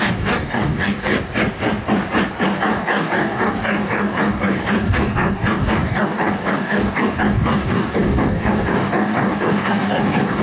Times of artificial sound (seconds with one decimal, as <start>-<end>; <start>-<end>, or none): 0.0-1.1; 2.6-10.4